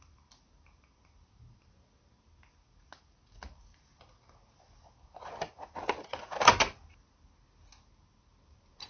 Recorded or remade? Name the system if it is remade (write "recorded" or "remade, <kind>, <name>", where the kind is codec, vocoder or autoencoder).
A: recorded